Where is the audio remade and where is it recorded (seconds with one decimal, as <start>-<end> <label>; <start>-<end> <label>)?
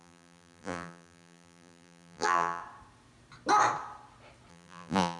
0.0-2.6 remade; 2.6-4.5 recorded; 4.5-5.2 remade